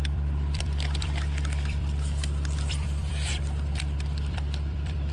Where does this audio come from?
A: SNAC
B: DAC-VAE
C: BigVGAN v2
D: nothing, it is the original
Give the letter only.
C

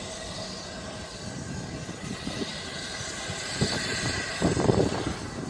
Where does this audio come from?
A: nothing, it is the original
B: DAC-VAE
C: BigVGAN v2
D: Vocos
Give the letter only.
A